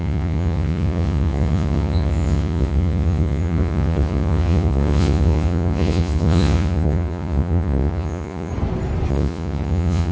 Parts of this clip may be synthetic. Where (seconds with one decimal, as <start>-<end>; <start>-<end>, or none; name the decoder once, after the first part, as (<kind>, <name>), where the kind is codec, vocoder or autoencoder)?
0.0-8.5 (vocoder, Vocos); 9.1-10.1